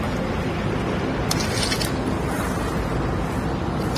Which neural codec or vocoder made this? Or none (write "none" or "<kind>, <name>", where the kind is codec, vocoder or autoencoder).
none